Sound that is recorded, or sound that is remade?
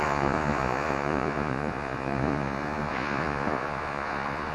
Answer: remade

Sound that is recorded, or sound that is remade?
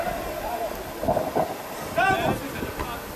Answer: recorded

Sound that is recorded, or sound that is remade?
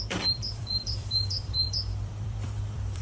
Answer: remade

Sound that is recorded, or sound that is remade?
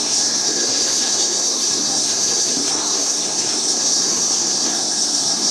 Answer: remade